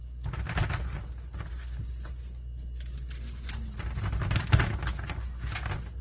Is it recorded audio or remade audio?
recorded